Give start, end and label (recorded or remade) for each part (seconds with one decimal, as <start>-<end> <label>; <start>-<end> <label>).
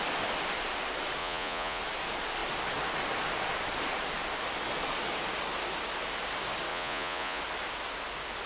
0.0-1.2 recorded; 1.2-1.8 remade; 1.8-6.7 recorded; 6.7-7.4 remade; 7.4-8.5 recorded